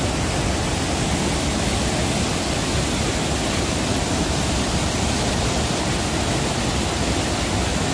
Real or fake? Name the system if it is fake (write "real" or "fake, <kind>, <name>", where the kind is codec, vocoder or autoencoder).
real